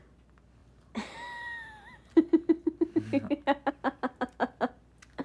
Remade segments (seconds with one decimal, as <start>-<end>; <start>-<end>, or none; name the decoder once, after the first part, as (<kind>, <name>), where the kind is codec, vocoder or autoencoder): none